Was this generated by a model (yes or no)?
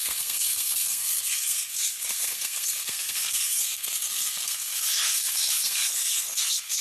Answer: yes